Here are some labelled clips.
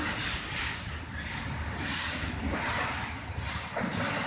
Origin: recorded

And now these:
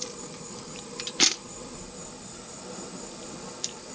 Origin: remade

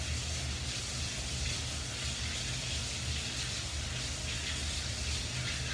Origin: recorded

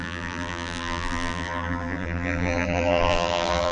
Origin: remade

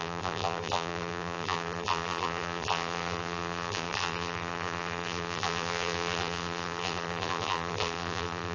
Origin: remade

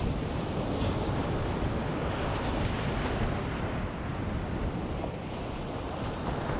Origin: remade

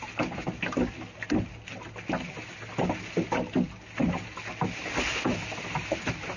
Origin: recorded